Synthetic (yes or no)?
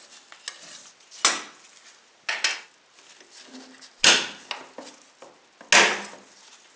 no